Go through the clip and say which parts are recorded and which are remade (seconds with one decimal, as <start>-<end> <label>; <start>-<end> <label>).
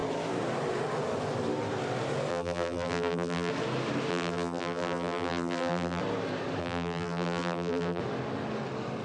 0.0-2.3 recorded; 2.3-3.5 remade; 3.5-4.1 recorded; 4.1-6.0 remade; 6.0-6.6 recorded; 6.6-8.0 remade; 8.0-9.0 recorded